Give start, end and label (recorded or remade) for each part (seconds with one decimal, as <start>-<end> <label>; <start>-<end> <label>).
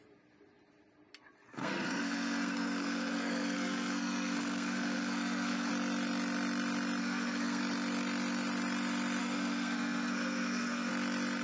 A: 0.0-1.5 recorded; 1.5-5.7 remade; 5.7-7.0 recorded; 7.0-7.6 remade; 7.6-9.2 recorded; 9.2-10.9 remade; 10.9-11.4 recorded